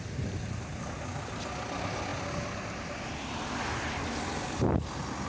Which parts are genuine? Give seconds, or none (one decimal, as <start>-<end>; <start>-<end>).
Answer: 0.0-5.3